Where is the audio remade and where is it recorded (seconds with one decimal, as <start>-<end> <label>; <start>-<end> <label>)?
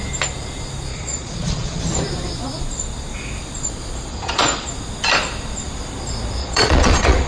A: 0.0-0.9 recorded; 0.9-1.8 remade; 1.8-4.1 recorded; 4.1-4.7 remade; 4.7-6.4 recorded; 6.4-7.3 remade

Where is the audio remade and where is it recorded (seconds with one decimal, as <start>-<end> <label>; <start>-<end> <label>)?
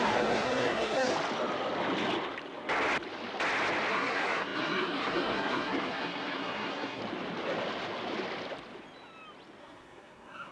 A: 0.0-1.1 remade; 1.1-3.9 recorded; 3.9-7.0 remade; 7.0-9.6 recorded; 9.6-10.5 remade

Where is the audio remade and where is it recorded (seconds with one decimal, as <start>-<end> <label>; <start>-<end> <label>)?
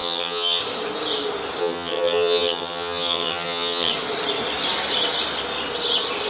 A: 0.0-0.6 remade; 0.6-1.6 recorded; 1.6-3.9 remade; 3.9-6.3 recorded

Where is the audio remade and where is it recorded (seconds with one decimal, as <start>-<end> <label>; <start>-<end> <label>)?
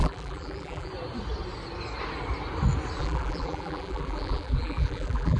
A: 0.0-0.9 remade; 0.9-3.0 recorded; 3.0-5.4 remade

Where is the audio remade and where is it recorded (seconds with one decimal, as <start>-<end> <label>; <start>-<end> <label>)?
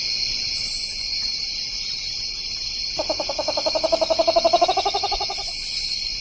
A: 0.0-1.4 remade; 1.4-4.9 recorded; 4.9-6.2 remade